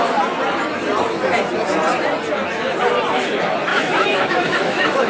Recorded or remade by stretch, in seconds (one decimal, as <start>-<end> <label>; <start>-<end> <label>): 0.0-3.7 recorded; 3.7-5.1 remade